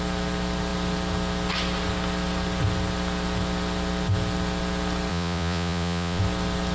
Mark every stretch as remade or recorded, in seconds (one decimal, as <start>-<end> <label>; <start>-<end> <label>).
0.0-5.1 recorded; 5.1-6.2 remade; 6.2-6.7 recorded